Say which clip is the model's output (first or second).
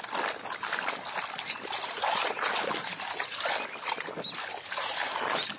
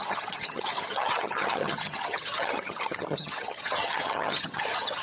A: second